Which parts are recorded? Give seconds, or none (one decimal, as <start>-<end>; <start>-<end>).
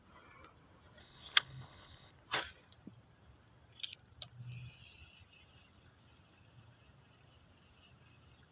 0.0-1.0; 2.1-8.5